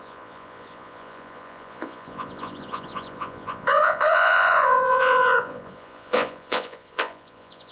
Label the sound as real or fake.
fake